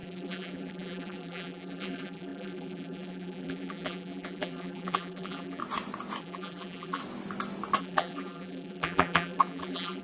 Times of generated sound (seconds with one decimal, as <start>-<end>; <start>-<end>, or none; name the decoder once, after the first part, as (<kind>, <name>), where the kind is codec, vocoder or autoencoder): 0.0-5.6 (vocoder, BigVGAN v2); 6.2-7.0; 7.8-10.0